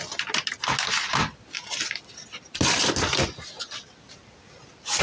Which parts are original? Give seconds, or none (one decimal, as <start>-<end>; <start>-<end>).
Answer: 0.0-5.0